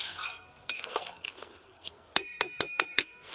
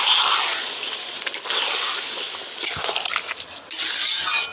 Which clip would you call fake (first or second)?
first